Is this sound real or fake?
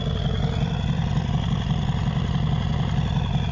fake